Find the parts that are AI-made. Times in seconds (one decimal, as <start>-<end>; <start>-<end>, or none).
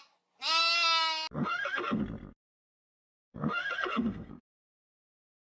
1.4-2.0; 2.7-5.5